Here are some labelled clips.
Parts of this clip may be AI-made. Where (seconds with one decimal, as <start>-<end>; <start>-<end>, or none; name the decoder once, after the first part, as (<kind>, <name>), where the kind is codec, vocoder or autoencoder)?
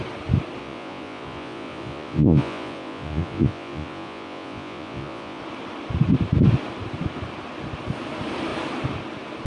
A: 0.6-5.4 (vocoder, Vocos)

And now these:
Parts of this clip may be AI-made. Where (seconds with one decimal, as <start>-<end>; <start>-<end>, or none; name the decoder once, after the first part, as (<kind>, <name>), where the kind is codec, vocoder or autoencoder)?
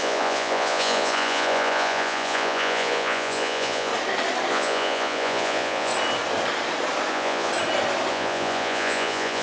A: 0.0-3.9 (vocoder, Vocos); 4.5-5.9; 7.1-7.5; 8.1-9.4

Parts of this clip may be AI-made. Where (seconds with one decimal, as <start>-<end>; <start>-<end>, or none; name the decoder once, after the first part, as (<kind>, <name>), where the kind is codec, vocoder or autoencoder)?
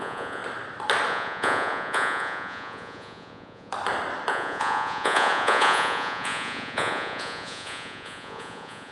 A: 0.0-0.4 (vocoder, Vocos); 1.1-3.7; 4.3-8.9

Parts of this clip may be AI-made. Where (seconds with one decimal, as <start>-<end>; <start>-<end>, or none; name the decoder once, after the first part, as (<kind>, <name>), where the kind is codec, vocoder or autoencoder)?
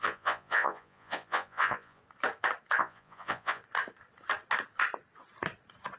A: 0.0-2.0 (vocoder, Vocos); 2.8-3.6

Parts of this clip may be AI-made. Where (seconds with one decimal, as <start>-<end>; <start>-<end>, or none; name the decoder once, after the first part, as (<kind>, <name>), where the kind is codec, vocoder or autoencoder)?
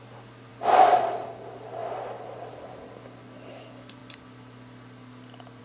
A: none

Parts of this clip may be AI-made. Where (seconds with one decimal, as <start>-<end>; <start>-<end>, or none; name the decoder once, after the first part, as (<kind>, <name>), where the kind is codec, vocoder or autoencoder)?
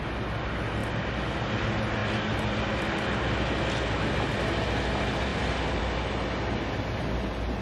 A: none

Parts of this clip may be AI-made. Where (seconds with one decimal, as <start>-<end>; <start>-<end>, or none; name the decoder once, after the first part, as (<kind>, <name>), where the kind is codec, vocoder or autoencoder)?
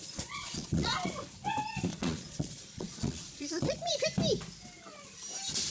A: 0.0-1.1 (vocoder, Vocos); 1.9-4.0